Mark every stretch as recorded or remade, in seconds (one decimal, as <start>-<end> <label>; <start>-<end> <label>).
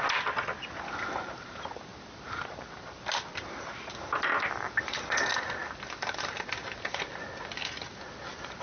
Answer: 0.0-8.6 recorded